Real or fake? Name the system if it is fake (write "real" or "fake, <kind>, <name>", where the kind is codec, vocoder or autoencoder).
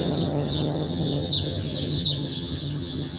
fake, vocoder, HiFi-GAN